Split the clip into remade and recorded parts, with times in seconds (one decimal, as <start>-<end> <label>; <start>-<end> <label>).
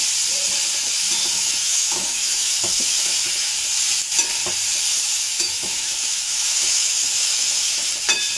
0.0-1.2 recorded; 1.2-3.5 remade; 3.5-4.9 recorded; 4.9-7.9 remade; 7.9-8.4 recorded